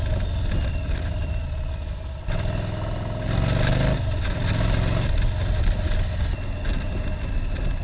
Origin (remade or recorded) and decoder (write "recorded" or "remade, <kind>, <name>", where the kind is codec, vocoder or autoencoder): recorded